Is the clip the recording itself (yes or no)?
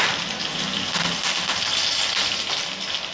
yes